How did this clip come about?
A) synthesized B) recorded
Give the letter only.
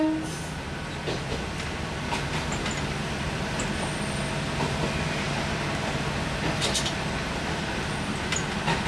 B